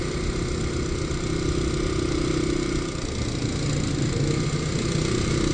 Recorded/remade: recorded